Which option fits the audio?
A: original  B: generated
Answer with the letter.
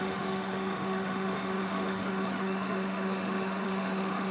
B